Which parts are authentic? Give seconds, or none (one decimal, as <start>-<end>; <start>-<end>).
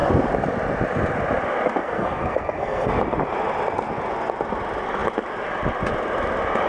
0.0-1.8; 2.9-6.7